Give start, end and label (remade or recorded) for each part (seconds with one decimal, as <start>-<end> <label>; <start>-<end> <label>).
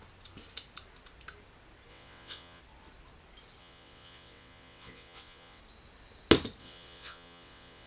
0.0-1.9 recorded; 1.9-2.6 remade; 2.6-3.6 recorded; 3.6-5.6 remade; 5.6-6.6 recorded; 6.6-7.9 remade